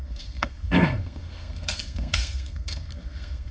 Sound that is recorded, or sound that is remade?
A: remade